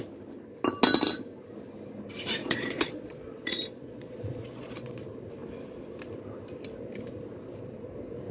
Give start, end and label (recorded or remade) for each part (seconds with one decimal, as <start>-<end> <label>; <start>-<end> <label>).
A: 0.0-2.4 recorded; 2.4-5.0 remade; 5.0-8.3 recorded